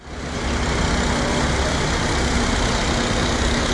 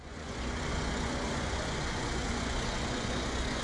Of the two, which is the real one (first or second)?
first